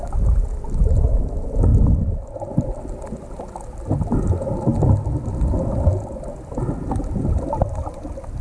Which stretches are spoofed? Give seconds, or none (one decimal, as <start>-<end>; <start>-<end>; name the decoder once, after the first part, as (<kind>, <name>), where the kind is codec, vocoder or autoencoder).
none